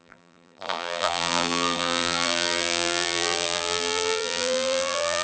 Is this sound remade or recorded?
remade